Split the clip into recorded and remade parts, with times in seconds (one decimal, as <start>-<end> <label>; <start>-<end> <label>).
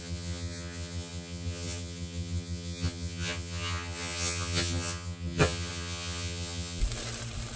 0.0-6.8 remade; 6.8-7.6 recorded